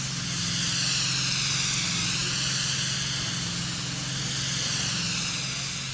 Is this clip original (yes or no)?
yes